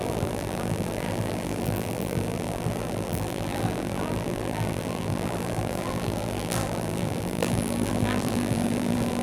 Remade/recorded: remade